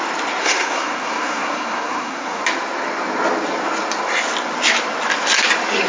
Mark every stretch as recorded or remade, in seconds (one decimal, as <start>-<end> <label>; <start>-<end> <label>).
0.0-0.4 recorded; 0.4-2.4 remade; 2.4-5.9 recorded

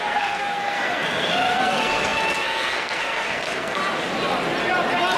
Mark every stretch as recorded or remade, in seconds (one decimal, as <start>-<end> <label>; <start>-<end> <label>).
0.0-3.8 remade; 3.8-5.2 recorded

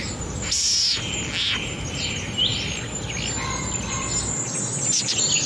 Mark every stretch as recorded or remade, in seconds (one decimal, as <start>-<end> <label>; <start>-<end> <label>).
0.0-5.5 recorded

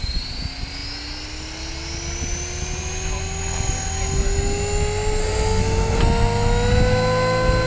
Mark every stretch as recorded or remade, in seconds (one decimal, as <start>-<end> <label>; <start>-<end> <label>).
0.0-5.2 recorded; 5.2-6.0 remade; 6.0-7.7 recorded

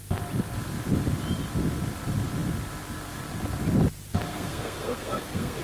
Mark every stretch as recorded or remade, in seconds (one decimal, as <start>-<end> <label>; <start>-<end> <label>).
0.0-4.3 recorded; 4.3-5.6 remade

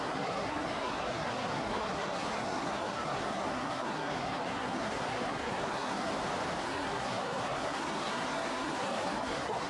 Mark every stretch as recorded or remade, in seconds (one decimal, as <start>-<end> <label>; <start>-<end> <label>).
0.0-6.1 remade; 6.1-6.6 recorded; 6.6-9.7 remade

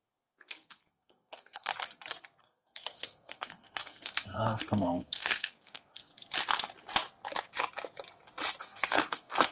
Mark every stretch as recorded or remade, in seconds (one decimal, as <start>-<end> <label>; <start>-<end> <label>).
0.0-1.7 remade; 1.7-2.4 recorded; 2.4-6.1 remade; 6.1-8.6 recorded; 8.6-9.5 remade

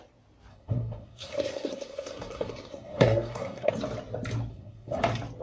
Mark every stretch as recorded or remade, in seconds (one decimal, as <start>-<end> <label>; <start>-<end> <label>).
0.0-0.5 recorded; 0.5-3.7 remade; 3.7-4.5 recorded; 4.5-5.0 remade; 5.0-5.4 recorded